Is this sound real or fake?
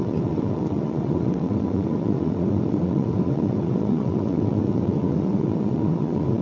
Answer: fake